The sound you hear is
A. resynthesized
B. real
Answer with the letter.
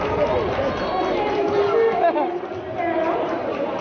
B